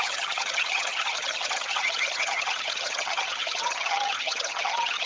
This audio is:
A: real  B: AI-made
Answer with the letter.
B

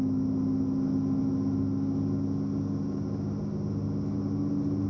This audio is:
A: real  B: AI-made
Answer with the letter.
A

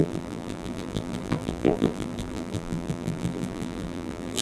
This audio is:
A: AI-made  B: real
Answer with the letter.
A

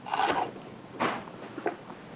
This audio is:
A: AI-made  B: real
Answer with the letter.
B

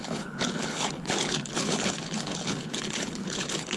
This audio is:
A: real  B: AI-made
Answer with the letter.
B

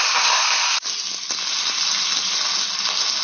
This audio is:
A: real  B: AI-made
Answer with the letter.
A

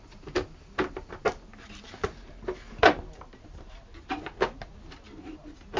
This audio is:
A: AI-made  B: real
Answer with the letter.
B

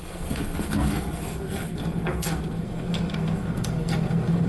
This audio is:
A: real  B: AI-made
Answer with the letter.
B